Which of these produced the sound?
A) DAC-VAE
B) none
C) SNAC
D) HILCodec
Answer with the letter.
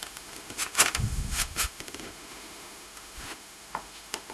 A